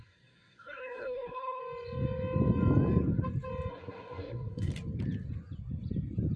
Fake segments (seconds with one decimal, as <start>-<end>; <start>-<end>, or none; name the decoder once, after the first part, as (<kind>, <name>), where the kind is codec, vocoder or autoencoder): 0.0-1.6 (codec, SNAC); 3.7-4.7